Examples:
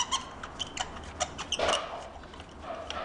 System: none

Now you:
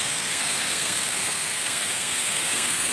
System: codec, SNAC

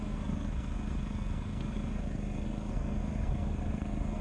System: codec, SNAC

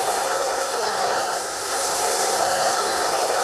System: codec, SNAC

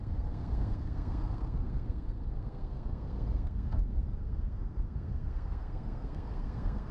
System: codec, SNAC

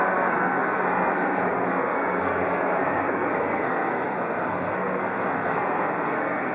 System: codec, SNAC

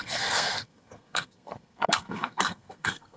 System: codec, SNAC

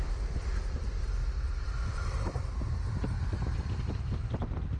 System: none